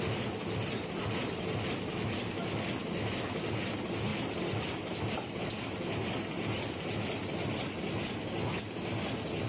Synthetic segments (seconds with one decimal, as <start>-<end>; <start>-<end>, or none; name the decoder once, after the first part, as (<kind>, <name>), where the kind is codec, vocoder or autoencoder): none